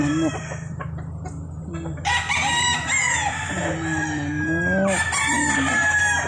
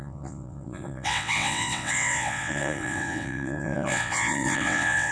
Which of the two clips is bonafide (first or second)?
first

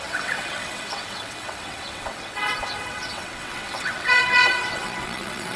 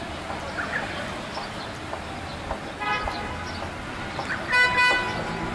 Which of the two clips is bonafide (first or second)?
second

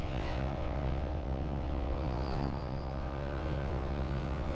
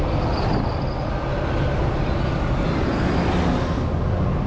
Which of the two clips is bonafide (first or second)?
second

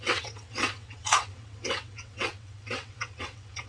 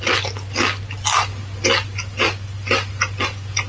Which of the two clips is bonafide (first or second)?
second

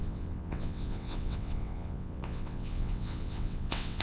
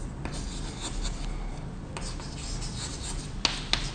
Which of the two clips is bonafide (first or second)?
second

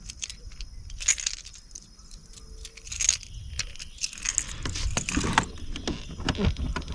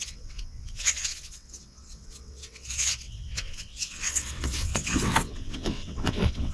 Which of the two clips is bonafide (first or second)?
first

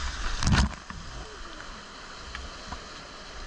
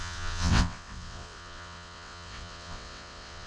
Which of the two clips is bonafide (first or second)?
first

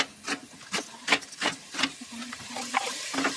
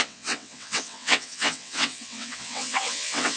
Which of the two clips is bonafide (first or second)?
first